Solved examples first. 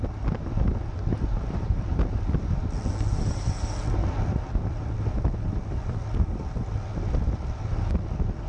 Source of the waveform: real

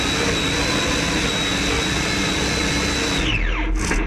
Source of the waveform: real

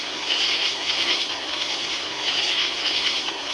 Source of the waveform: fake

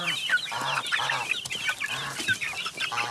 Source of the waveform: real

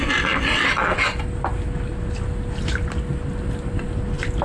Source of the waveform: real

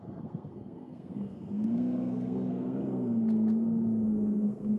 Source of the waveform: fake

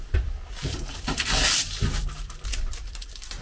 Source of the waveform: fake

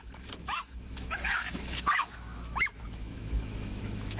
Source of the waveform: fake